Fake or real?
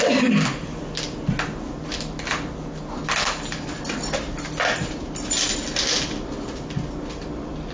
real